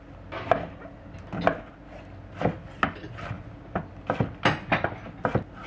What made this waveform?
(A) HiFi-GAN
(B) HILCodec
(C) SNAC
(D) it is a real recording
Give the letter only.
D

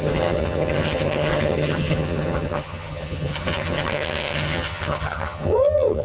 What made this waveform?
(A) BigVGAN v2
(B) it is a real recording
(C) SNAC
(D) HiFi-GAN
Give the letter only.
D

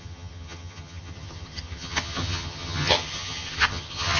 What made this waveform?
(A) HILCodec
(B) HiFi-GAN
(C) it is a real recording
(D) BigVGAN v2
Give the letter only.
B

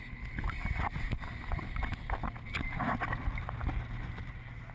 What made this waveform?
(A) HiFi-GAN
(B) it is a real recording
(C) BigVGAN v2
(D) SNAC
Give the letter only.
B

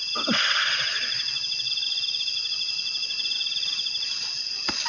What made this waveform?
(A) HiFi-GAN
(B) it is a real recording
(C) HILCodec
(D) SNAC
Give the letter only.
B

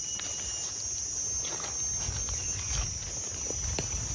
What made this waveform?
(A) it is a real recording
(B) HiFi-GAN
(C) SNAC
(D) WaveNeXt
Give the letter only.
A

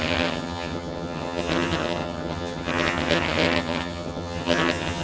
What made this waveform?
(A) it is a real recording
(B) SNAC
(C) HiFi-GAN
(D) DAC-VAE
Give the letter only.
C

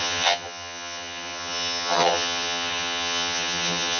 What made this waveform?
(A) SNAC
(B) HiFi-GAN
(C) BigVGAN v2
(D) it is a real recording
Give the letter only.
B